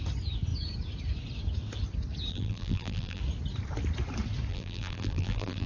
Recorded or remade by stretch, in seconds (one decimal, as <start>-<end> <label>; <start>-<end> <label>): 0.0-2.3 recorded; 2.3-3.2 remade; 3.2-4.5 recorded; 4.5-5.7 remade